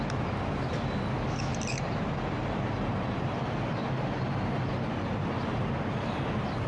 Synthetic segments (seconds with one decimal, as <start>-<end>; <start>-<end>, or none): 1.5-3.3; 5.5-6.7